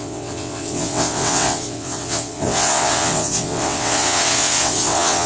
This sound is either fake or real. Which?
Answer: fake